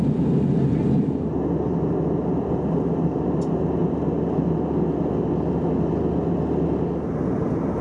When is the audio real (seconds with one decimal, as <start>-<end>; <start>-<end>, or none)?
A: 0.0-7.8